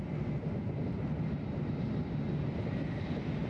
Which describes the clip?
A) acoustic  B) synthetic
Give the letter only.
A